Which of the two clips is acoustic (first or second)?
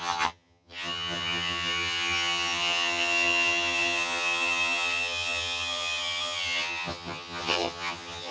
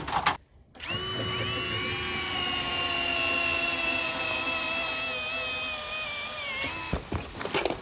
second